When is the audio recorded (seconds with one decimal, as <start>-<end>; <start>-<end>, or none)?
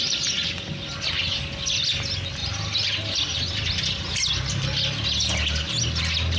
0.0-6.4